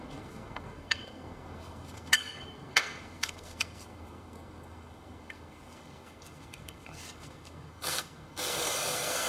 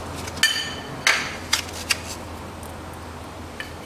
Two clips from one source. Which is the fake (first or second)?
first